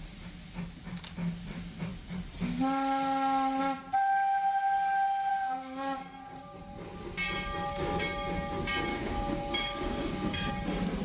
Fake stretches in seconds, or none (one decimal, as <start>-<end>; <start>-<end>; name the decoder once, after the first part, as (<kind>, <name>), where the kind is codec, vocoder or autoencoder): 5.3-6.6 (codec, DAC); 8.9-10.5